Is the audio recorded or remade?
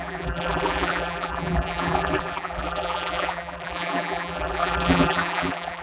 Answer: remade